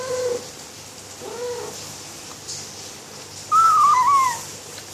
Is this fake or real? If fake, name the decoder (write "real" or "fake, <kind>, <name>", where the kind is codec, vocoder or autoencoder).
real